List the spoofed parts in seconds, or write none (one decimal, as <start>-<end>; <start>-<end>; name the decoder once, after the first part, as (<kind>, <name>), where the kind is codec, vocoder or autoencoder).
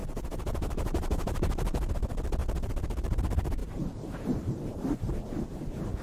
0.0-1.9 (vocoder, BigVGAN v2); 2.4-3.2; 3.6-5.1